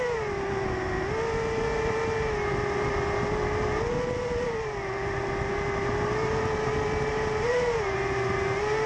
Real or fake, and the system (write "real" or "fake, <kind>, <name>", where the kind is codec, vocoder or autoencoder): real